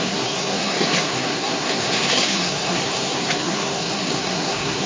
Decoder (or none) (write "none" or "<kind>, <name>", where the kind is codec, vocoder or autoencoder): codec, SNAC